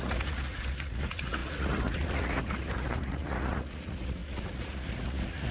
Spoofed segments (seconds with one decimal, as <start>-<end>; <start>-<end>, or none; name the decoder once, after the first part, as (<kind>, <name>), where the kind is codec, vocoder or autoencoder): 0.0-5.5 (vocoder, Vocos)